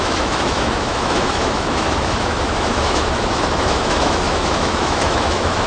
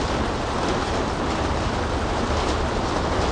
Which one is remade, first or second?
first